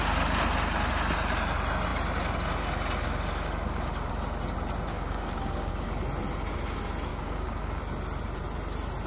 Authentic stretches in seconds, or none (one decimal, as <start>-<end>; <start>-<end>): 0.0-4.9; 5.7-7.1; 7.8-9.1